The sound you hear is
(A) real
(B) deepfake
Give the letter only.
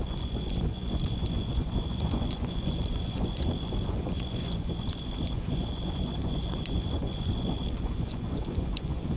B